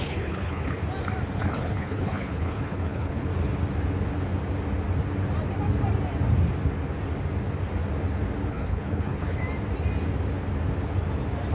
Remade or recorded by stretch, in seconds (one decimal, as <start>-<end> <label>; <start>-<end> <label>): 0.0-0.8 remade; 0.8-1.4 recorded; 1.4-3.3 remade; 3.3-8.5 recorded; 8.5-9.4 remade; 9.4-11.5 recorded